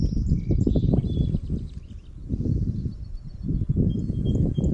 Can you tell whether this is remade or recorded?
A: recorded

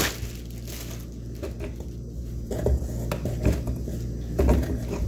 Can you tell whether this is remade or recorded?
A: recorded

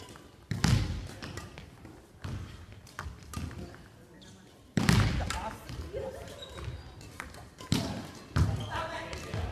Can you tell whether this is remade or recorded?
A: recorded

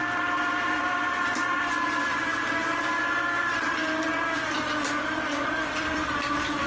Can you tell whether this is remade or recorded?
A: remade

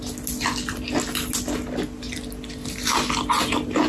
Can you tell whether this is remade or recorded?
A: recorded